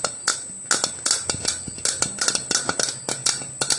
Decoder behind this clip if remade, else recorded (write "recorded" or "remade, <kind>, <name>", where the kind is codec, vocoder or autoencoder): recorded